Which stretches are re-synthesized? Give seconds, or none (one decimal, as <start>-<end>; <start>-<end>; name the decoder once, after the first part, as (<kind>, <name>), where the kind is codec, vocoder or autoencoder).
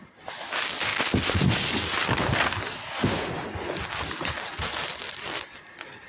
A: none